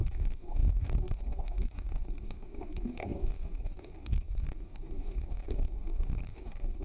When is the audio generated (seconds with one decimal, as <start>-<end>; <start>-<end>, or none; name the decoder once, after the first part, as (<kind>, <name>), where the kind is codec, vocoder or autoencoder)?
0.0-6.8 (codec, DAC)